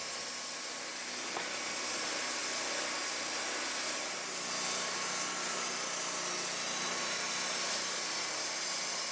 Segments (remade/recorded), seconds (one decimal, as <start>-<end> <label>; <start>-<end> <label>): 0.0-9.1 recorded